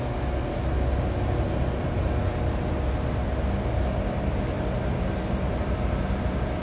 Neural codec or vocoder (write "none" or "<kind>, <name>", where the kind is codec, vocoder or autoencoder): none